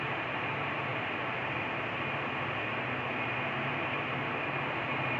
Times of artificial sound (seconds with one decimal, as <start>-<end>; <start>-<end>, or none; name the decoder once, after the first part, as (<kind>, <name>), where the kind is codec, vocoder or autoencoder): none